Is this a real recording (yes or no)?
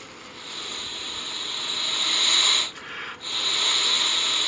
yes